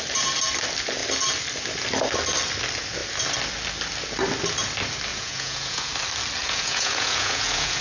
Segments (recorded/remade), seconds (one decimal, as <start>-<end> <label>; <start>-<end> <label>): 0.0-5.1 recorded; 5.1-5.9 remade; 5.9-6.4 recorded; 6.4-7.8 remade